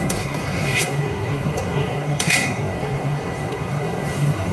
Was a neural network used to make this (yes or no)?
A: yes